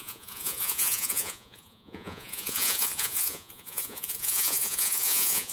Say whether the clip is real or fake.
fake